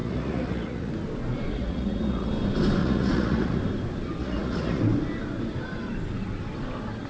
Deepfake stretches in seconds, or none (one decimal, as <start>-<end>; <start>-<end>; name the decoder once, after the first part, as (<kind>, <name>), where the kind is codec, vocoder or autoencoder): 0.0-0.9 (vocoder, Vocos); 1.6-2.3; 2.8-3.6; 4.2-4.8